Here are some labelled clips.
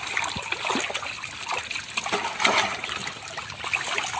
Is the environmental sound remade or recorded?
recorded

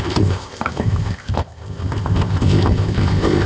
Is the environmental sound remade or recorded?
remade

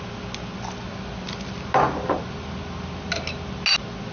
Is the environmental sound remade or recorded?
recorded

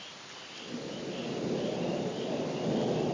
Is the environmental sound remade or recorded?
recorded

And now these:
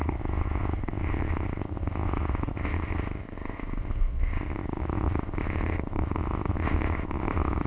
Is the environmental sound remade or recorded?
remade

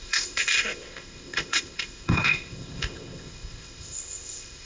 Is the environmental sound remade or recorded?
remade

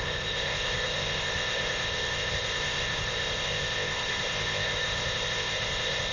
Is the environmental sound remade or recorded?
remade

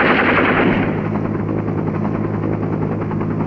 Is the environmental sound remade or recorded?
recorded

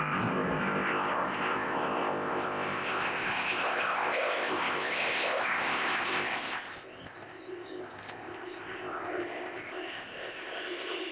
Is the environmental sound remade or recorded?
remade